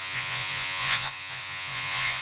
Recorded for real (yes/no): no